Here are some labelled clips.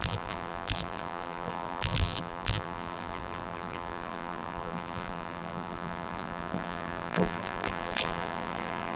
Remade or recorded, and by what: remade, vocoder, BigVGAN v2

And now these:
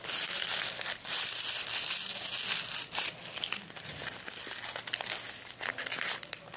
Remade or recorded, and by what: recorded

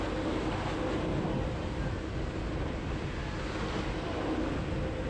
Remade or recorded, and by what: recorded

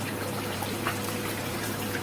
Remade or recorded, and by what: remade, vocoder, BigVGAN v2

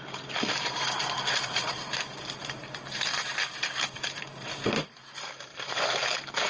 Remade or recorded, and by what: remade, vocoder, BigVGAN v2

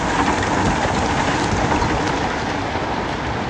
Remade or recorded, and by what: recorded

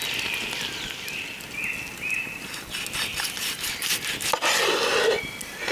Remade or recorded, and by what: recorded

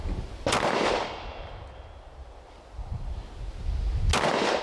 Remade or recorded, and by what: recorded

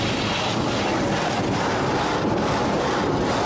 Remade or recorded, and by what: recorded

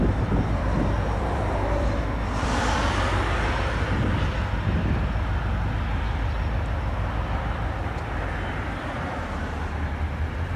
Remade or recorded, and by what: recorded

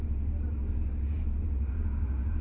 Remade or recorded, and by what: remade, vocoder, BigVGAN v2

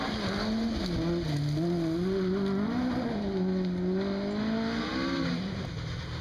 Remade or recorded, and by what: recorded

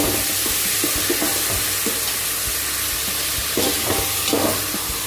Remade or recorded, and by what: recorded